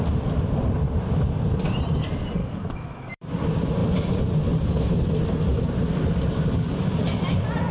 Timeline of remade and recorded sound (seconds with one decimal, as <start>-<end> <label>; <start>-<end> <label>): 0.0-2.4 recorded; 2.4-3.3 remade; 3.3-7.7 recorded